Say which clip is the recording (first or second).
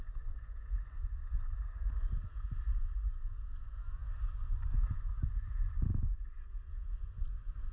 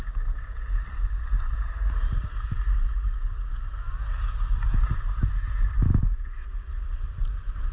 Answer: second